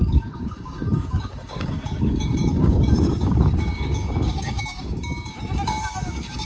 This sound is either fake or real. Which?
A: fake